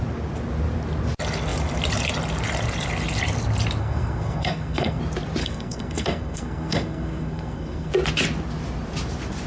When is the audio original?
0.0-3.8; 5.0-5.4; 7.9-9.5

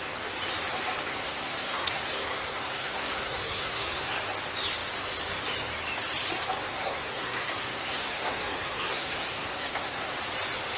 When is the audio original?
0.0-1.1; 4.2-6.7; 10.1-10.8

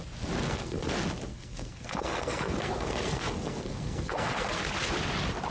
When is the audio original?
0.0-0.4; 0.9-1.3; 4.6-5.5

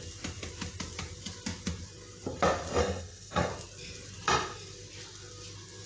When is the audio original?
0.0-2.8; 3.5-5.9

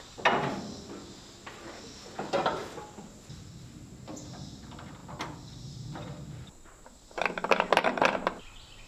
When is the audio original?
0.0-8.9

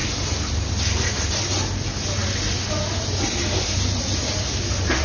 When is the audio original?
0.0-5.0